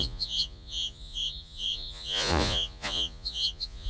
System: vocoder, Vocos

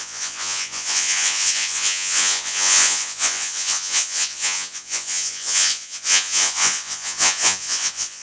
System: vocoder, Vocos